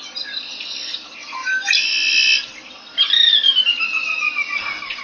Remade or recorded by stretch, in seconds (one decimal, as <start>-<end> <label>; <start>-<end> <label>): 0.0-5.0 recorded